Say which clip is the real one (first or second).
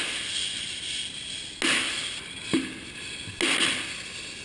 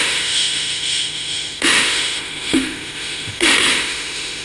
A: first